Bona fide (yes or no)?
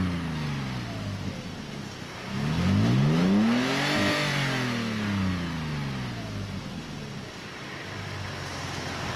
yes